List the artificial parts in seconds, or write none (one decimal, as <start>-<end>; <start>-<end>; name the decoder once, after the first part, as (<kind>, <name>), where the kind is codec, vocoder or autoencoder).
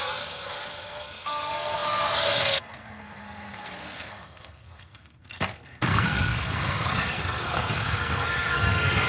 0.0-9.1 (codec, SNAC)